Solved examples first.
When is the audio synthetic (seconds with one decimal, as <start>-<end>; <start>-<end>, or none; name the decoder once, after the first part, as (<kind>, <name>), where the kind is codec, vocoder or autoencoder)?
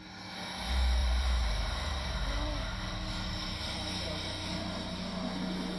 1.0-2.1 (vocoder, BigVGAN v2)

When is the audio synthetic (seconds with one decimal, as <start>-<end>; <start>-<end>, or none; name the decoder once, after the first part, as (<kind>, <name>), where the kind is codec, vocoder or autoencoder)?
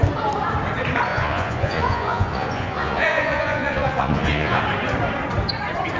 1.1-4.6 (vocoder, Vocos)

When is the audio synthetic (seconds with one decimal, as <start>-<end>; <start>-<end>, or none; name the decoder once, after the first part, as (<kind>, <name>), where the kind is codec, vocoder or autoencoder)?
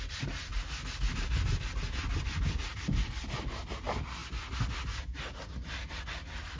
none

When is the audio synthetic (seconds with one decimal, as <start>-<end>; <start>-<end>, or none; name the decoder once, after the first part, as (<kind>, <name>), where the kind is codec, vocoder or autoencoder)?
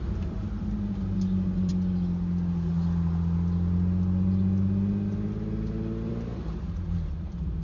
0.0-1.7 (vocoder, BigVGAN v2); 6.1-7.6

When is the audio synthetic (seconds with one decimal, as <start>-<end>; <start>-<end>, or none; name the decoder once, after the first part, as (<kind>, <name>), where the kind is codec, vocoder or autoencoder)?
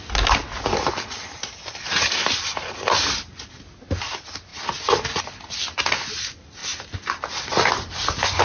none